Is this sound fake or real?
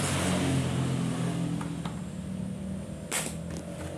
real